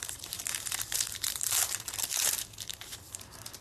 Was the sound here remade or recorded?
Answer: remade